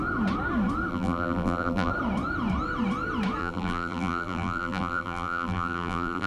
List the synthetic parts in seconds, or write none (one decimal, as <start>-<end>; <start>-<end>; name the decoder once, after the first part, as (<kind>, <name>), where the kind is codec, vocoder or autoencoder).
0.9-1.9 (vocoder, BigVGAN v2); 3.4-6.3